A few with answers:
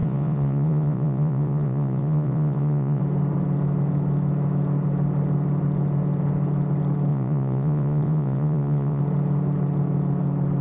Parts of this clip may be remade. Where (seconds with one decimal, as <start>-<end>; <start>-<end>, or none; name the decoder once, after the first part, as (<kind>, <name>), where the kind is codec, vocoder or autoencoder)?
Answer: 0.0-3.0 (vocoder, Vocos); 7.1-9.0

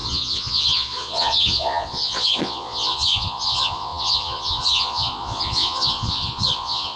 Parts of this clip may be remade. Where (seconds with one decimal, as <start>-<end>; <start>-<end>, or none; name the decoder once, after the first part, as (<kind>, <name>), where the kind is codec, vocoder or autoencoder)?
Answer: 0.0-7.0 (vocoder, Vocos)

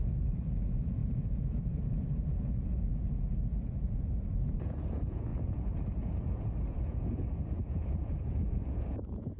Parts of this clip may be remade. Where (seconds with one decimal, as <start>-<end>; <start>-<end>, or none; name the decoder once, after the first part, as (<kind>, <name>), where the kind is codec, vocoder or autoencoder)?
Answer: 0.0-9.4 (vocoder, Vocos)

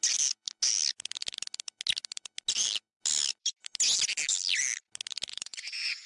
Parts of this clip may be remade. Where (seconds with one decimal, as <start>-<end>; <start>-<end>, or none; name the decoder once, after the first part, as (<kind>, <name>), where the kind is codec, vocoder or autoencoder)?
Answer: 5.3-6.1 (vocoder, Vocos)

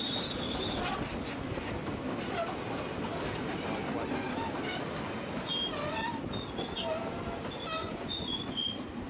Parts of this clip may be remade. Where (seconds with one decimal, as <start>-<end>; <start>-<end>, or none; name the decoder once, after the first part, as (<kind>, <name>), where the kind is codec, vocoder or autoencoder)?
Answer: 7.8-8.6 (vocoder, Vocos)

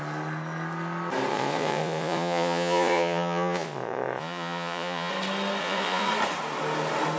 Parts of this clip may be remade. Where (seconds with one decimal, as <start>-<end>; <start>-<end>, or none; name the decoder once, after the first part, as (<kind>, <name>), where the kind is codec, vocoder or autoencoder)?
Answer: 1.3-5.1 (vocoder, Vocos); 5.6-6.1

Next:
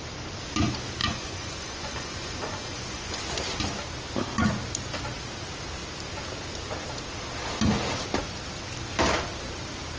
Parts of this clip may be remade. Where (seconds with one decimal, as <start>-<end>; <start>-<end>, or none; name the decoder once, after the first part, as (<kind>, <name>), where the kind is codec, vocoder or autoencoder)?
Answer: 1.0-3.2 (vocoder, Vocos)